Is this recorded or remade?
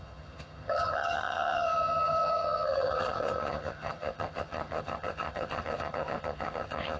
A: remade